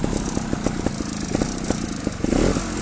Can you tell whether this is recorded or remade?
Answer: recorded